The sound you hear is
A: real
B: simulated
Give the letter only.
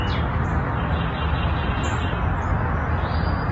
A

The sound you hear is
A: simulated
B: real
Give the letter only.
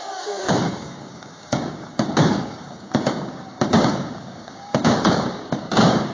A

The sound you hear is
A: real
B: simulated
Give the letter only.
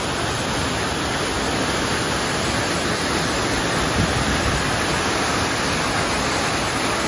A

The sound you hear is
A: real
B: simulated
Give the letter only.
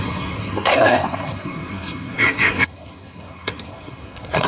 B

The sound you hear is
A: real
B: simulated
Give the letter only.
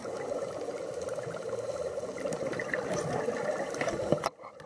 A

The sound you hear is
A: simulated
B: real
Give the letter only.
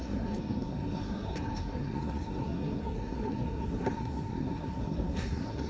A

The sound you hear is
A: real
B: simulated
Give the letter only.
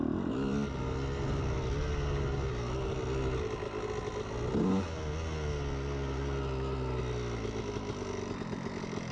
A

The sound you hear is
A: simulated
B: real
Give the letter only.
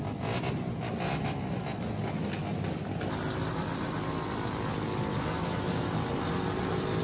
B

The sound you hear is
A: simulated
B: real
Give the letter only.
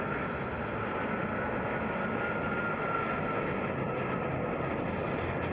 B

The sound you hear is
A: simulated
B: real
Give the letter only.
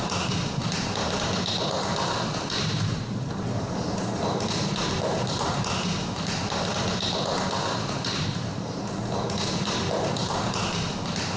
A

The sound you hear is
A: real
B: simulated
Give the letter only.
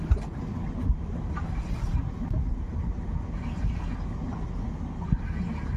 A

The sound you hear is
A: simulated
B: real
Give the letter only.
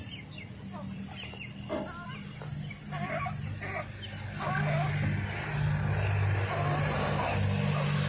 B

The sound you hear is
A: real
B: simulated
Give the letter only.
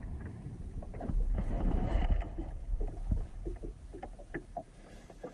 B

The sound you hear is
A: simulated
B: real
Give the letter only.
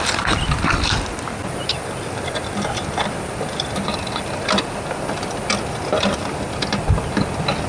B